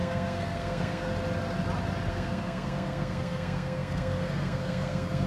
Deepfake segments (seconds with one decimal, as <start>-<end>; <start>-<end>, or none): 0.0-1.1; 2.1-5.3